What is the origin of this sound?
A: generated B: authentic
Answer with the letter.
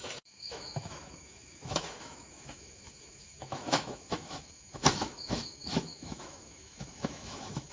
A